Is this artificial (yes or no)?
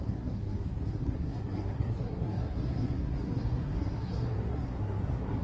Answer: yes